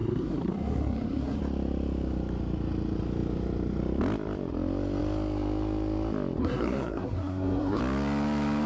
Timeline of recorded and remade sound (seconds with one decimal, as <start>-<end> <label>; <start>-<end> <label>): 0.0-1.4 remade; 1.4-6.4 recorded; 6.4-7.8 remade; 7.8-8.7 recorded

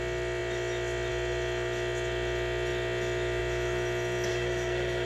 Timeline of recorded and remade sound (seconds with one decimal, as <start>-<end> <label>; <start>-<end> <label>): 0.0-4.3 recorded; 4.3-5.1 remade

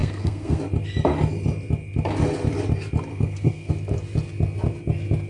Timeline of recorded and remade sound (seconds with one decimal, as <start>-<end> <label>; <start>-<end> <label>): 0.0-0.6 remade; 0.6-3.1 recorded; 3.1-3.7 remade; 3.7-5.3 recorded

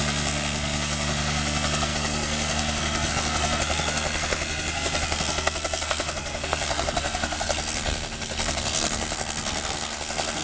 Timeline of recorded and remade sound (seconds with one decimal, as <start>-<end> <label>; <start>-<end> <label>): 0.0-10.4 remade